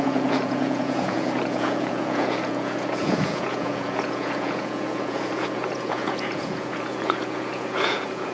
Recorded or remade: remade